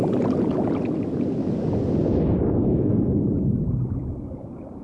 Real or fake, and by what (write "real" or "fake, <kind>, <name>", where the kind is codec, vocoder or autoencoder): real